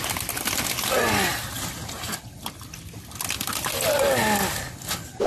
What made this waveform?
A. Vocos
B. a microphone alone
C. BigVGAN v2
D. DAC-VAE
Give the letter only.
B